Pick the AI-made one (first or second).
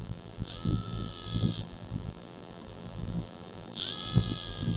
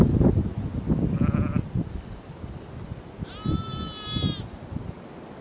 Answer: first